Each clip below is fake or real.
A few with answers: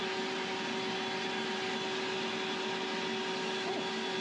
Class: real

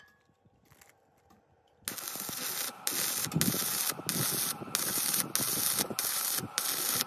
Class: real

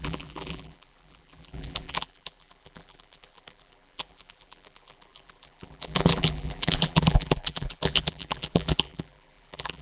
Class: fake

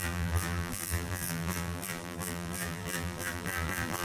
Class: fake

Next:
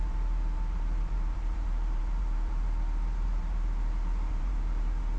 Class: fake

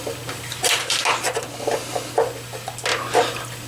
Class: real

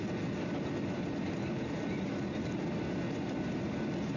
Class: fake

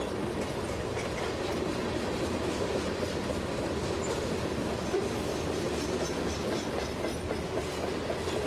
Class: real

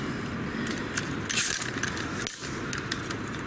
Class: real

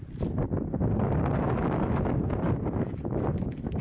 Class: real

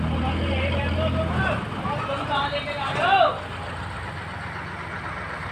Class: real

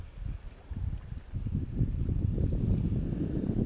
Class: fake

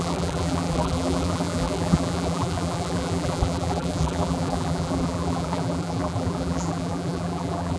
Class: fake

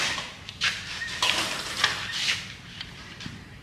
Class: fake